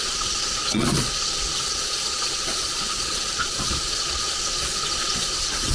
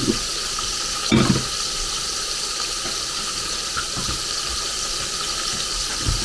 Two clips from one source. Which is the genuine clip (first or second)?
second